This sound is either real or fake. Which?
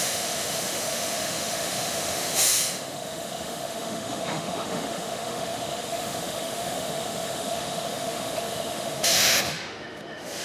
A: fake